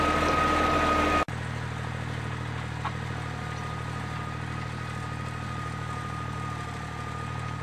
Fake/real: real